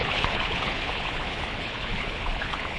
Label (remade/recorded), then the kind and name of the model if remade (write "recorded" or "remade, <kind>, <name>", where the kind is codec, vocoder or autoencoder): remade, codec, HILCodec